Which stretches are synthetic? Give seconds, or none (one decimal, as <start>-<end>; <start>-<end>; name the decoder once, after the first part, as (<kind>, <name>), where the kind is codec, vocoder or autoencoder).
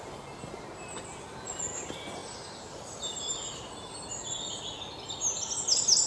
none